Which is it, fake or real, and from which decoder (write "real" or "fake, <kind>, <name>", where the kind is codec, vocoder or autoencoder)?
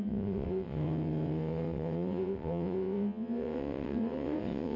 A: fake, vocoder, WaveNeXt